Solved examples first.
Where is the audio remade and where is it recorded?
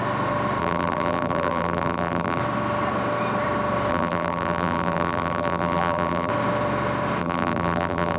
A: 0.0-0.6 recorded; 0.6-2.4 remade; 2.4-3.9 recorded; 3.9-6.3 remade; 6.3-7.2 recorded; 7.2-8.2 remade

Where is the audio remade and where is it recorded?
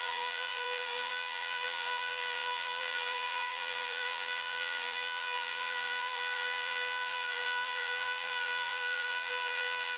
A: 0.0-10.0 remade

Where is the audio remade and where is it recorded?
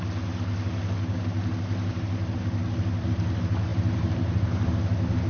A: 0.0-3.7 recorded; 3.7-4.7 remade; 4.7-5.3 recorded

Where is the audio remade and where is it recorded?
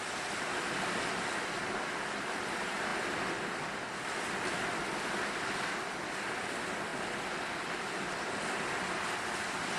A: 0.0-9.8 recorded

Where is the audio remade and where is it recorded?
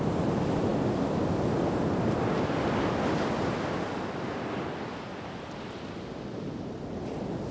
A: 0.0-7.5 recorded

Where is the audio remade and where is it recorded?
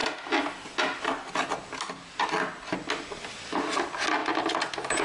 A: 0.0-5.0 recorded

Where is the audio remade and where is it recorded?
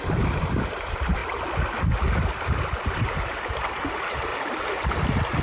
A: 0.0-1.2 remade; 1.2-2.8 recorded; 2.8-4.3 remade; 4.3-5.4 recorded